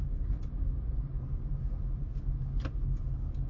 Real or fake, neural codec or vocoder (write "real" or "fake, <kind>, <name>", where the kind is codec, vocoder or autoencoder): real